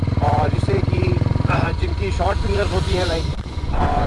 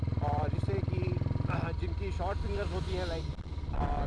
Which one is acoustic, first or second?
second